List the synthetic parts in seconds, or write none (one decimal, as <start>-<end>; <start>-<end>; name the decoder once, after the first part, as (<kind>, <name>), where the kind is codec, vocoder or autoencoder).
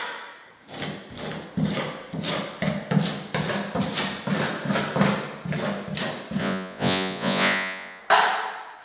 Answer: 6.4-8.0 (vocoder, Vocos)